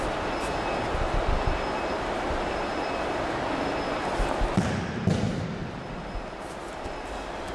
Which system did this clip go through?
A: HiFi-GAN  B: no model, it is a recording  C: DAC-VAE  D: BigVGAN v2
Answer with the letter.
B